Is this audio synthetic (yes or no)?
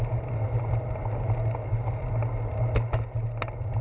no